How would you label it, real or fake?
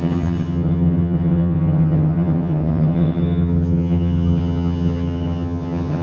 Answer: fake